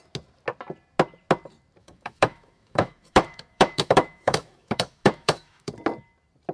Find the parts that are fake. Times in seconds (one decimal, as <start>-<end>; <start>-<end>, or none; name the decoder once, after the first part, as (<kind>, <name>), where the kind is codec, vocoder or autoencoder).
1.8-5.7 (autoencoder, DAC-VAE)